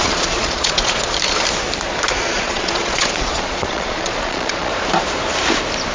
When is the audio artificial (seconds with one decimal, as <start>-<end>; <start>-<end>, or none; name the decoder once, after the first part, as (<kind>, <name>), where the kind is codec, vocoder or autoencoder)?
0.0-1.1 (vocoder, Vocos); 2.2-4.7